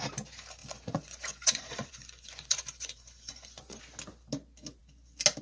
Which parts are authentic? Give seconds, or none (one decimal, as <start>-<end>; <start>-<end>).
0.0-0.6; 3.8-5.4